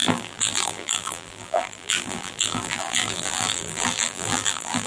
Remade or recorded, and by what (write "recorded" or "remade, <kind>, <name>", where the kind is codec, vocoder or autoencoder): remade, vocoder, BigVGAN v2